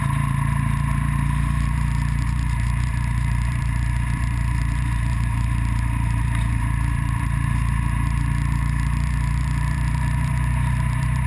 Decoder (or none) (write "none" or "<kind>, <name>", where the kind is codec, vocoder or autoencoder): vocoder, BigVGAN v2